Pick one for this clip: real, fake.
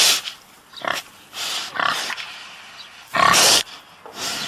real